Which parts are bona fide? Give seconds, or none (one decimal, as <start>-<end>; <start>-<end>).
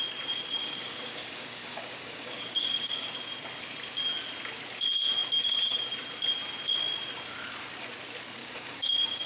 0.0-0.6; 3.2-8.4